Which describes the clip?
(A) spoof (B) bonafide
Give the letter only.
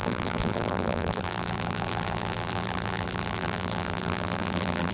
A